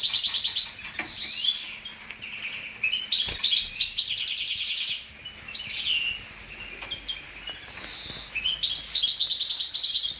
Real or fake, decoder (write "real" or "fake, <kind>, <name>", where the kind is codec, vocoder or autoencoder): real